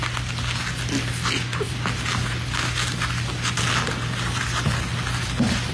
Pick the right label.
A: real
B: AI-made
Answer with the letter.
A